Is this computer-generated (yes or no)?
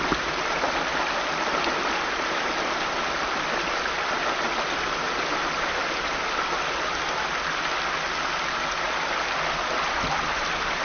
no